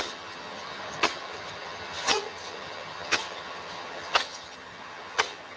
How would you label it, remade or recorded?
remade